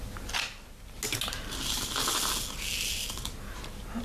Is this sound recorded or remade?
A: recorded